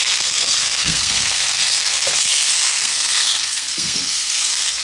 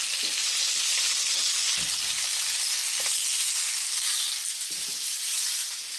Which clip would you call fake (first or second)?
first